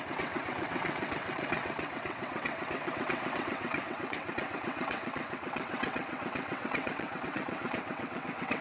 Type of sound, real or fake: fake